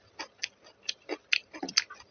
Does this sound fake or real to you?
real